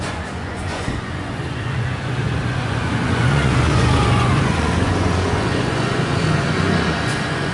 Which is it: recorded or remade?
remade